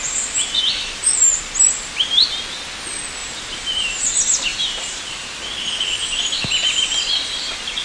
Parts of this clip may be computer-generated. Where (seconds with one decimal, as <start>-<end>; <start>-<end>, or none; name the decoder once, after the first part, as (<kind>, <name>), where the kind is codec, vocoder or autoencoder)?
3.2-4.0 (vocoder, BigVGAN v2); 4.5-5.4

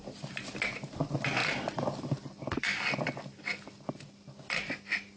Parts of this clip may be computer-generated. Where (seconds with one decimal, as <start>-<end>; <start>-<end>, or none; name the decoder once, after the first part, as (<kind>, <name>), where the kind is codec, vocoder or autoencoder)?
none

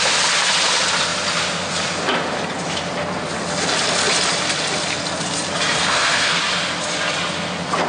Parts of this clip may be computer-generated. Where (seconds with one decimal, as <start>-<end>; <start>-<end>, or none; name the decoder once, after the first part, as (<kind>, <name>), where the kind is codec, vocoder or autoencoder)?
5.8-6.4 (codec, SNAC)

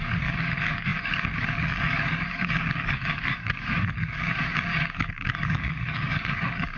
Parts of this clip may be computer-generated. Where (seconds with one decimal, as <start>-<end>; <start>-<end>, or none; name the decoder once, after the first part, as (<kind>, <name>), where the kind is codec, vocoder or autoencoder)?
0.0-6.8 (codec, DAC)

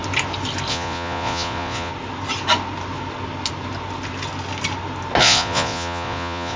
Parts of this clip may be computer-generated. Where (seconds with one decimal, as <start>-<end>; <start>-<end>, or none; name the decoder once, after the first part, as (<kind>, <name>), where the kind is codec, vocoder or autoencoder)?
0.7-1.9 (vocoder, Vocos); 5.2-6.6

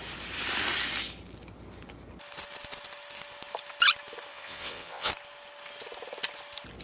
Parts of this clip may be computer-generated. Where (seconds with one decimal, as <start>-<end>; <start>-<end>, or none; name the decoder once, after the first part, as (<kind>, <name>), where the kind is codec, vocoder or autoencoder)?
4.3-5.1 (vocoder, WaveNeXt)

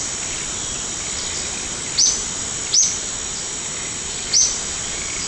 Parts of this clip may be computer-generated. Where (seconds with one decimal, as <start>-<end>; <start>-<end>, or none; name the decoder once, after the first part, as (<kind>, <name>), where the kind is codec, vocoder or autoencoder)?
none